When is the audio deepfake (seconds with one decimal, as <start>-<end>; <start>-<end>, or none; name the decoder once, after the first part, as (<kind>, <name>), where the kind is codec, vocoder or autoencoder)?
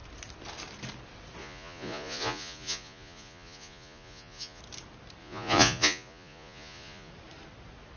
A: 1.4-4.6 (vocoder, Vocos); 5.2-7.1